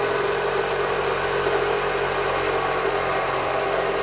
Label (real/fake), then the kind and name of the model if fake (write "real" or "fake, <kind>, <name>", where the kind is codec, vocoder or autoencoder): real